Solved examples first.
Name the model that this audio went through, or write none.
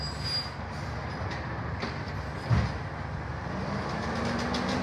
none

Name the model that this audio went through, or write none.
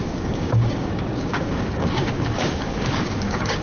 codec, DAC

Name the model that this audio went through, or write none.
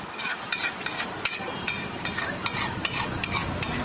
none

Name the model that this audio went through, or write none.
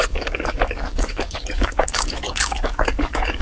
codec, DAC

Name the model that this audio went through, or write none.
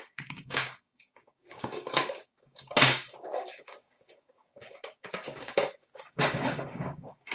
codec, DAC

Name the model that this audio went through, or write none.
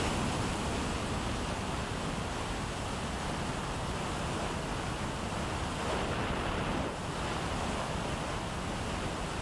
none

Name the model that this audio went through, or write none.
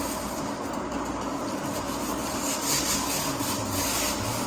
none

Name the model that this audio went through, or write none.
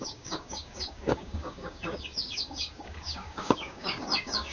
codec, DAC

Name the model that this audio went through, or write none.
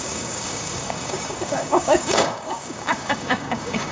codec, DAC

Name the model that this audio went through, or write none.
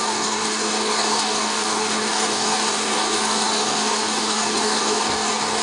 codec, DAC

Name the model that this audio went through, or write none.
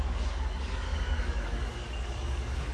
codec, DAC